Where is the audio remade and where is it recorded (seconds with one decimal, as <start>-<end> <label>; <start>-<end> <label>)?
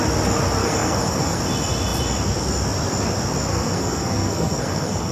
0.0-0.6 recorded; 0.6-1.4 remade; 1.4-3.5 recorded; 3.5-5.1 remade